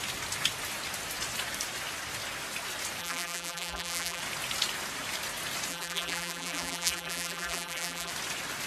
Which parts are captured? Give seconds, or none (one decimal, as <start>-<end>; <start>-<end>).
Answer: 0.0-3.0; 4.2-5.7; 8.1-8.7